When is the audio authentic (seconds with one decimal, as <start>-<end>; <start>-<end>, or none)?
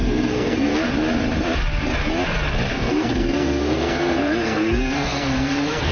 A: 0.7-2.7